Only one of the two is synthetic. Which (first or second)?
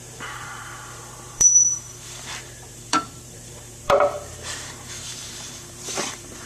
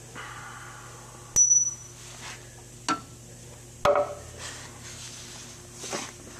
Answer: first